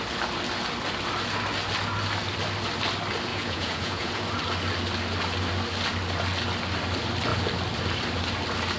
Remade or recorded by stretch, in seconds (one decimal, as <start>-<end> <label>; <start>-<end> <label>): 0.0-3.3 recorded; 3.3-4.2 remade; 4.2-8.8 recorded